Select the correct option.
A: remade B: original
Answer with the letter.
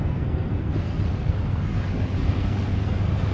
A